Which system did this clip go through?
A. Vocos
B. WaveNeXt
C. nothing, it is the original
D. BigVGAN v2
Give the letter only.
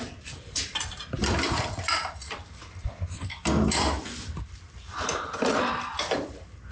D